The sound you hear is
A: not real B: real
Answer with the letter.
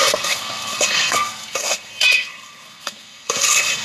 A